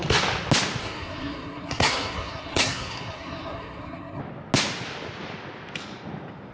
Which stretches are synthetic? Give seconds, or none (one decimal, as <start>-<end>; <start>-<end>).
0.8-4.2